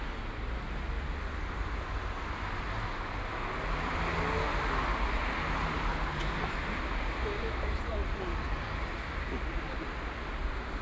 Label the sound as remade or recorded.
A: recorded